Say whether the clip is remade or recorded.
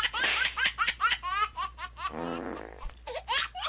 remade